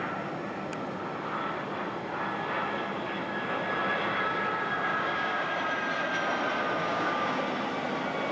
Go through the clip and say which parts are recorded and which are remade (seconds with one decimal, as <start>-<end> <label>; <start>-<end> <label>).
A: 0.0-4.9 recorded; 4.9-5.5 remade; 5.5-6.8 recorded; 6.8-7.4 remade; 7.4-8.3 recorded